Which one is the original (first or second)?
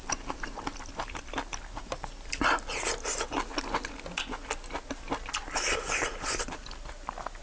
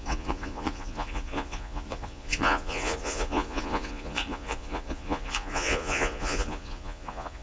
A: first